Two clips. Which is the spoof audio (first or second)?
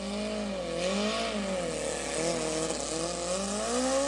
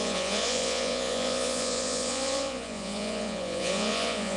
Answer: second